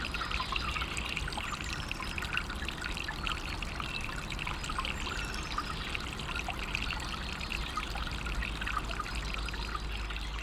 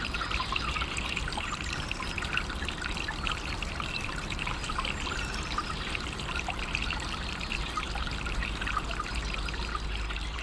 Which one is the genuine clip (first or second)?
first